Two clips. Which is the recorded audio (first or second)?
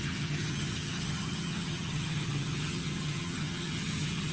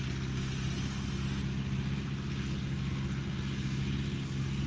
second